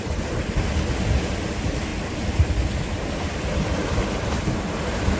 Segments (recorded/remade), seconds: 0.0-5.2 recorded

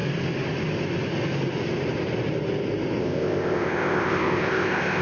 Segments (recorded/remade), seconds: 0.0-3.0 recorded; 3.0-5.0 remade